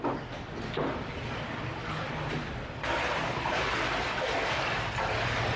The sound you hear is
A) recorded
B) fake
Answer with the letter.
A